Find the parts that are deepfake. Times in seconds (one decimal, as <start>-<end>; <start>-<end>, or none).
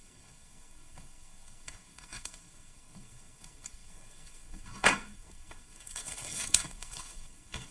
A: 0.0-7.7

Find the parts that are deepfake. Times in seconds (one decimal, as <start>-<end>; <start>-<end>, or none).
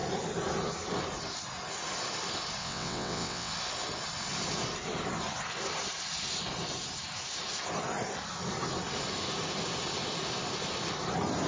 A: 2.6-3.5